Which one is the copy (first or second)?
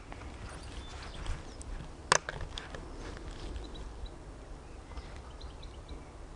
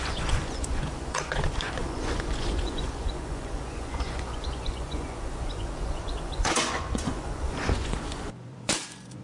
second